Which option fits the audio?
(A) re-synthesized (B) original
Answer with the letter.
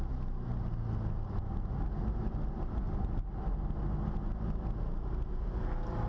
B